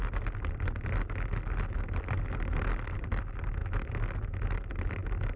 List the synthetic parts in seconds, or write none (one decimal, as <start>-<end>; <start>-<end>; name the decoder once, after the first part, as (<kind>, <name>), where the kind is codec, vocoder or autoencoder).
none